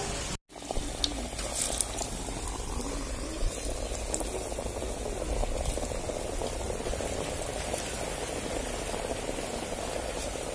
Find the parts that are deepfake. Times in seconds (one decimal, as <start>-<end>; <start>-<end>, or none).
none